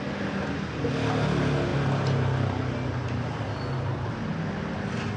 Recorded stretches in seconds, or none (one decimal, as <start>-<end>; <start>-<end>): 0.0-5.2